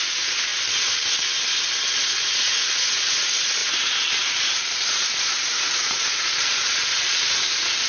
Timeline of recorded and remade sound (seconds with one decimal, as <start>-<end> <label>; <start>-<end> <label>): 0.0-0.5 remade; 0.5-1.9 recorded; 1.9-7.9 remade